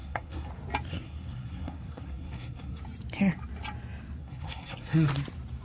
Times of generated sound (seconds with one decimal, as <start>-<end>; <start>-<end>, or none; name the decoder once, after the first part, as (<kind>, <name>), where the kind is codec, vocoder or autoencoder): 0.0-0.5 (codec, SNAC); 0.9-2.8; 4.2-5.1